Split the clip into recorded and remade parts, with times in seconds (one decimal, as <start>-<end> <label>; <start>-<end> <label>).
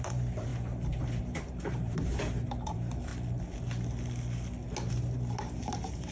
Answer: 0.0-0.5 remade; 0.5-1.2 recorded; 1.2-3.1 remade; 3.1-4.9 recorded; 4.9-6.1 remade